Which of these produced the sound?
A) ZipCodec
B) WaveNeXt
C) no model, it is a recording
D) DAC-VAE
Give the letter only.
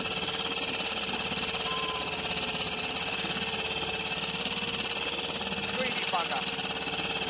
C